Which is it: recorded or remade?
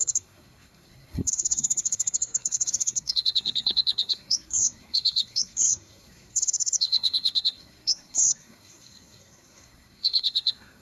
remade